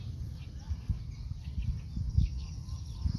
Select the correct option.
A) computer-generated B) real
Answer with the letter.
B